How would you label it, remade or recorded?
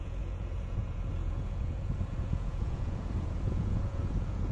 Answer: remade